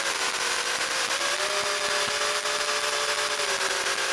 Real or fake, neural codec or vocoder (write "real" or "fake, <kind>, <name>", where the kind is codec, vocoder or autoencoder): real